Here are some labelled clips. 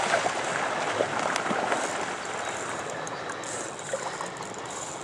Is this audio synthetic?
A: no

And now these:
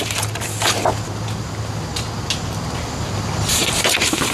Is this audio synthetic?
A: no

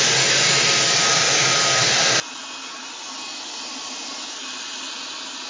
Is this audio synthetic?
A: no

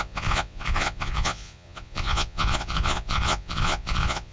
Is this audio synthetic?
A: yes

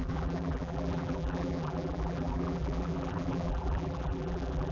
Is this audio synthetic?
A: yes